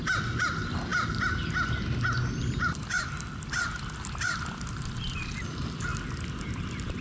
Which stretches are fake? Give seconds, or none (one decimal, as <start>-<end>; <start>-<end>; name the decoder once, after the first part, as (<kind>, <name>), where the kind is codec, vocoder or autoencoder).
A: none